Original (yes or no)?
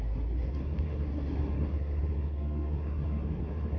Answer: no